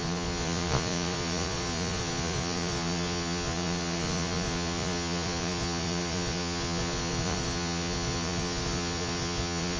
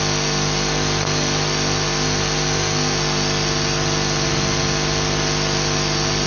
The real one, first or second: second